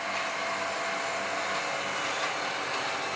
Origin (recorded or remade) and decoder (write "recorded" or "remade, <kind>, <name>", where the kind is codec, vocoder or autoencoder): recorded